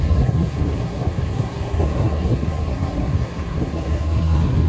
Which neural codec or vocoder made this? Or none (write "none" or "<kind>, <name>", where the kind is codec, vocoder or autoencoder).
codec, SNAC